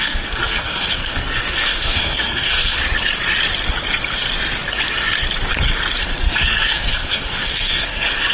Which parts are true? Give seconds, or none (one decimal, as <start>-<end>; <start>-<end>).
2.8-6.0